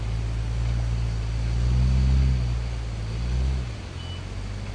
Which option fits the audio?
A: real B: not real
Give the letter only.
A